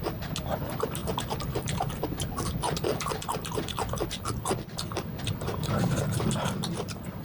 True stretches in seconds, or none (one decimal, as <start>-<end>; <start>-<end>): 0.0-7.2